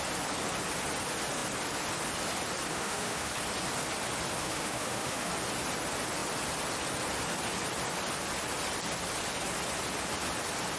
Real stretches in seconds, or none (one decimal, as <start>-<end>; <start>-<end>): 0.0-2.7; 3.3-4.4; 5.3-10.8